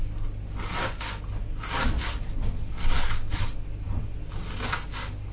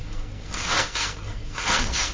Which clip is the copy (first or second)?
second